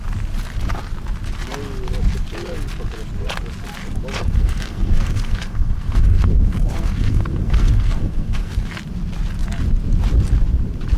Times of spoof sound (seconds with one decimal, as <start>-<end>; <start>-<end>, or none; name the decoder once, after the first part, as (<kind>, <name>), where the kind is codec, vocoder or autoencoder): 4.2-8.7 (codec, SNAC)